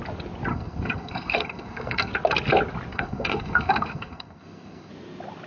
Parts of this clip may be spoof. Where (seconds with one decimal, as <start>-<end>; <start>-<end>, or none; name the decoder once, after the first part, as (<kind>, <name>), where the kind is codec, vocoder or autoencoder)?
0.5-2.1 (codec, SNAC); 2.9-4.9